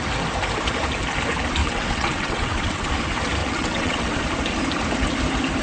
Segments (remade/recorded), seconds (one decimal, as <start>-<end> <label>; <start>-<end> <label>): 0.0-1.6 recorded; 1.6-2.9 remade; 2.9-3.4 recorded; 3.4-4.2 remade; 4.2-5.6 recorded